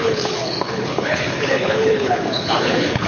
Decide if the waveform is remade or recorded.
remade